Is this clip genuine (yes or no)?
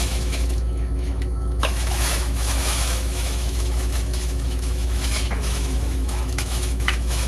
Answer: no